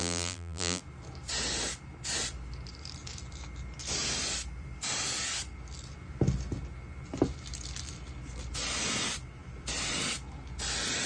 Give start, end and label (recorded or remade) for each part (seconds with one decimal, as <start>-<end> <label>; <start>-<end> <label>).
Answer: 0.0-0.8 remade; 0.8-11.1 recorded